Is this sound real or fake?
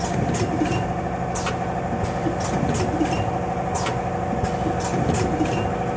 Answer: real